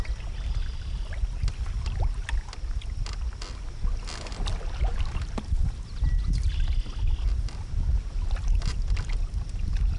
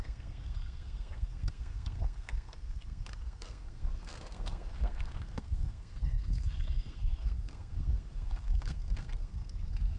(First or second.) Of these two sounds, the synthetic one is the second